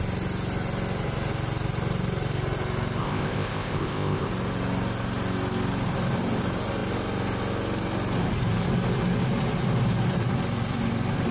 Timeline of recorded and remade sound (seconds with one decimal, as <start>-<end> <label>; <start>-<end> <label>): 0.0-3.0 recorded; 3.0-4.3 remade; 4.3-11.3 recorded